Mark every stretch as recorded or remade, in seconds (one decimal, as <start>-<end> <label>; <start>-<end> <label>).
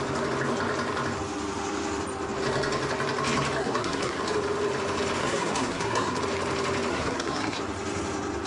0.0-3.6 recorded; 3.6-4.2 remade; 4.2-5.2 recorded; 5.2-6.2 remade; 6.2-6.9 recorded; 6.9-7.6 remade; 7.6-8.5 recorded